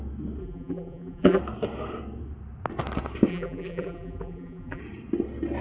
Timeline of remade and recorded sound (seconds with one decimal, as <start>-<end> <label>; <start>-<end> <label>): 0.0-0.4 recorded; 0.4-1.4 remade; 1.4-3.3 recorded; 3.3-4.8 remade; 4.8-5.6 recorded

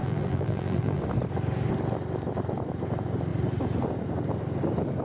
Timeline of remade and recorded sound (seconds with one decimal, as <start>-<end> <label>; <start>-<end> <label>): 0.0-1.0 remade; 1.0-5.0 recorded